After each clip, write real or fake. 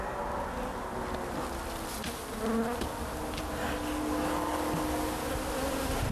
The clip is real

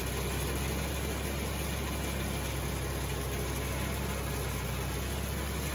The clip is real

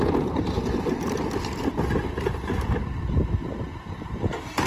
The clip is real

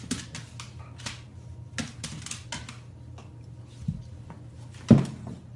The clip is real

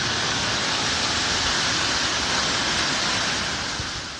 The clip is real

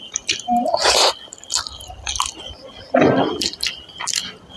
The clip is fake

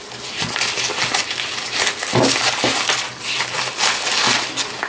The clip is real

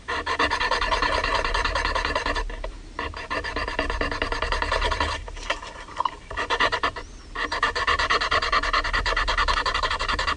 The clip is fake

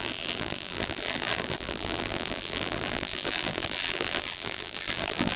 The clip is fake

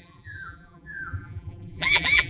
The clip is fake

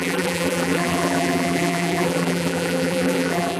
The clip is fake